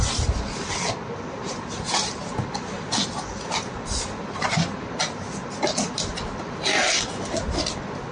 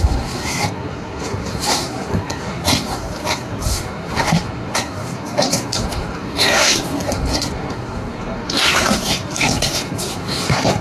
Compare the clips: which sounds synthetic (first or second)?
second